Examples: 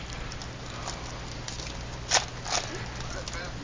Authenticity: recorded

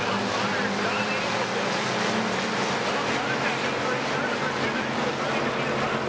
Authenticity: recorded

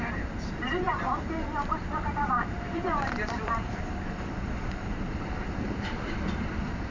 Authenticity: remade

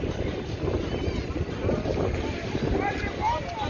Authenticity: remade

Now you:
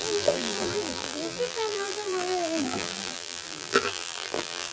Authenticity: remade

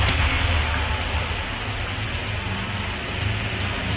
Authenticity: remade